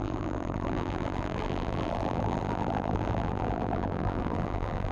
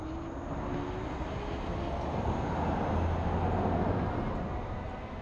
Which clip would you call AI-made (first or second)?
first